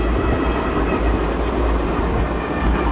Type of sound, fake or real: real